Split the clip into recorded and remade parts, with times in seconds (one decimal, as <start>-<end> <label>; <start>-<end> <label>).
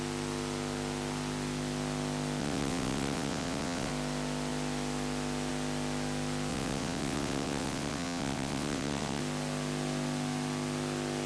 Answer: 0.0-2.4 recorded; 2.4-3.9 remade; 3.9-6.5 recorded; 6.5-9.2 remade; 9.2-11.3 recorded